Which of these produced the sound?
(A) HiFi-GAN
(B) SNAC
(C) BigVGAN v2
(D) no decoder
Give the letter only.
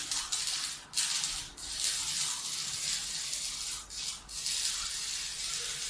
D